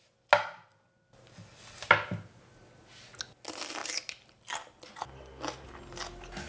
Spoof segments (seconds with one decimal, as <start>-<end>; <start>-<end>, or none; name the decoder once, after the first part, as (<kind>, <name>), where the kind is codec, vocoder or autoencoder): none